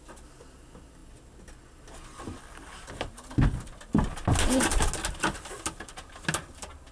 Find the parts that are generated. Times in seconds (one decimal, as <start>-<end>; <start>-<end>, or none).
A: none